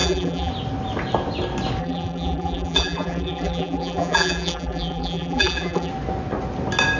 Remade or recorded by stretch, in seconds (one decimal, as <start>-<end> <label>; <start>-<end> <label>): 0.0-0.5 remade; 0.5-1.8 recorded; 1.8-5.9 remade; 5.9-7.0 recorded